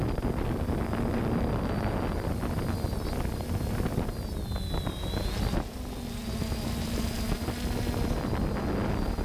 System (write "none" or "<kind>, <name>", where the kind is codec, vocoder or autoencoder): none